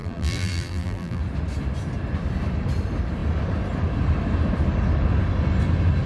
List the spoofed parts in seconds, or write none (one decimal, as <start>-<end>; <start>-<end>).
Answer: 0.0-1.2